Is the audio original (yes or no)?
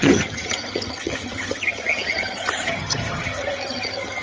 no